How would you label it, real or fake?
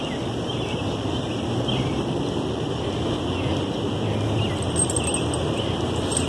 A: real